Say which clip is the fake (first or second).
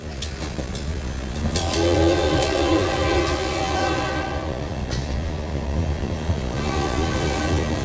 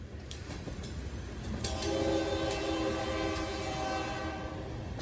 first